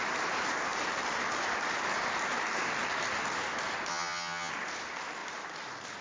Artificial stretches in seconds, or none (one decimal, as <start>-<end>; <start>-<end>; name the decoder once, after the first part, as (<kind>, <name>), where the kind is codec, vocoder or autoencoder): 3.9-4.5 (vocoder, HiFi-GAN)

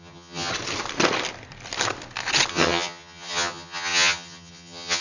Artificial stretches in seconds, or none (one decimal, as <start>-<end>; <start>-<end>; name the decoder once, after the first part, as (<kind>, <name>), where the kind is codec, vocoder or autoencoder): 0.0-0.5 (vocoder, HiFi-GAN); 2.5-5.0

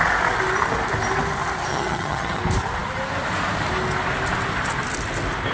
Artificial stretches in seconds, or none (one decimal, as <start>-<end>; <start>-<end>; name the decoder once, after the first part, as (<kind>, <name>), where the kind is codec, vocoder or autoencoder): 1.7-2.4 (vocoder, HiFi-GAN)

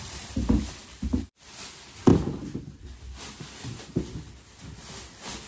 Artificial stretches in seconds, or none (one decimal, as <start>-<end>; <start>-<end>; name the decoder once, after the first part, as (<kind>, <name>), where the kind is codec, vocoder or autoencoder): none

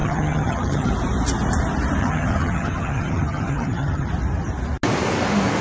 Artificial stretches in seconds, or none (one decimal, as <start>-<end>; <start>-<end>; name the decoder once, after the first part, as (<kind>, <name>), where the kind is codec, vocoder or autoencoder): 0.0-0.9 (vocoder, HiFi-GAN); 2.0-4.1

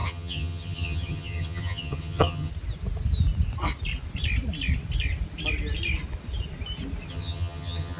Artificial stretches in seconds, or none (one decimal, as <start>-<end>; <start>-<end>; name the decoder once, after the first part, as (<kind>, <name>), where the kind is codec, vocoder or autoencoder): 0.0-2.5 (vocoder, HiFi-GAN); 7.1-8.0

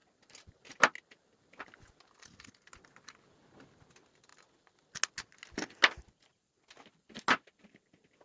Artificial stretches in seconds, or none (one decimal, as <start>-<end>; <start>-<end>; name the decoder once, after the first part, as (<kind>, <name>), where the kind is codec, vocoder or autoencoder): none

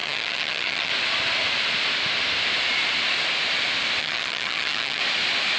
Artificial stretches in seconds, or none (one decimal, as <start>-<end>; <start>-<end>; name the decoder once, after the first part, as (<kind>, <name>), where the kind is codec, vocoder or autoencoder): 0.0-0.9 (vocoder, HiFi-GAN); 4.0-5.0